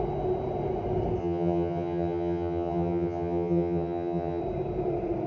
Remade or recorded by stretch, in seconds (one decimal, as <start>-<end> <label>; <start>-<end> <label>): 0.0-1.2 recorded; 1.2-4.4 remade; 4.4-5.3 recorded